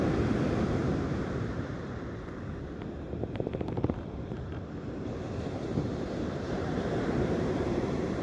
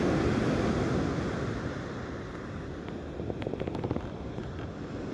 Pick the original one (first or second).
second